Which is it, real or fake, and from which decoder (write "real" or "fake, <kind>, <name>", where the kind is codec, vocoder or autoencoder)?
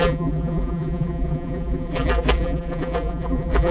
fake, vocoder, BigVGAN v2